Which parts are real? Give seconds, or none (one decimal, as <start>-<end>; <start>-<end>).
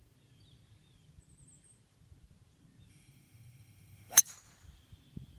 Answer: 0.0-2.9; 4.2-5.4